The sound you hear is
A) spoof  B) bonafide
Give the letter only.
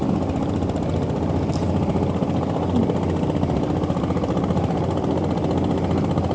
B